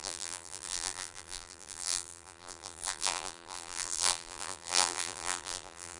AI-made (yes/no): yes